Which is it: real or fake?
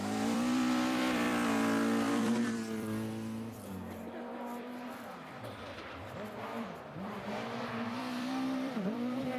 fake